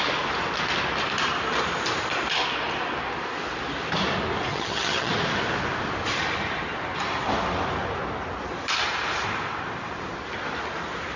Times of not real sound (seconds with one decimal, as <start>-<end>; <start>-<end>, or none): 4.5-5.1